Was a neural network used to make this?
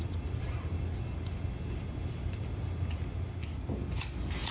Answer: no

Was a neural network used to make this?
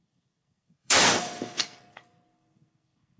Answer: yes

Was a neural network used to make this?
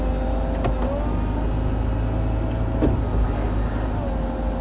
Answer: no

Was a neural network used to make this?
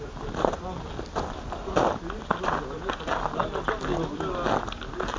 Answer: no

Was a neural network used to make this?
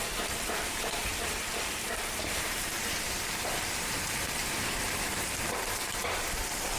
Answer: yes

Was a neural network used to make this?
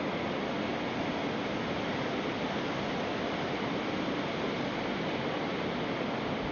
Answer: no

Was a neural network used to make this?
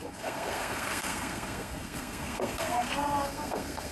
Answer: yes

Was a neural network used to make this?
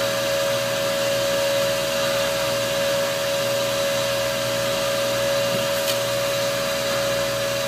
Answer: no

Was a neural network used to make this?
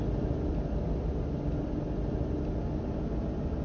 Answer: no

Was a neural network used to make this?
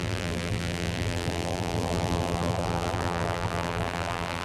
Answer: yes